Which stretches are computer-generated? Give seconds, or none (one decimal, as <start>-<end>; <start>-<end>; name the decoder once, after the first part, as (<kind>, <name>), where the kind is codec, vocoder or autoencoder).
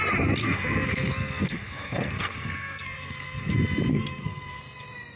0.4-3.5 (codec, SNAC); 3.9-4.6